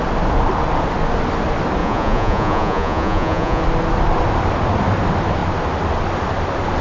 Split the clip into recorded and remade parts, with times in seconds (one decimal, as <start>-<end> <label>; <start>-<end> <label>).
0.0-1.8 recorded; 1.8-3.6 remade; 3.6-6.8 recorded